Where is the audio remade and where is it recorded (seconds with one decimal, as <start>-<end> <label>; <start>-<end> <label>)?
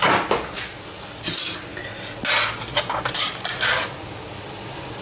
0.0-5.0 recorded